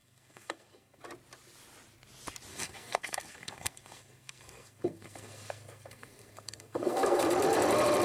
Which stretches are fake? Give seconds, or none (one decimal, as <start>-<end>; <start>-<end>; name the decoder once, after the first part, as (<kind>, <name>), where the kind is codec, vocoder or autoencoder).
0.0-1.0 (codec, SNAC); 2.5-7.3